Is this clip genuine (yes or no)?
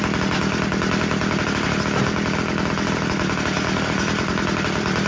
yes